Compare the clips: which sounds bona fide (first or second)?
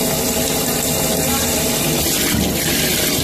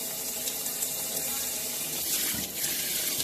first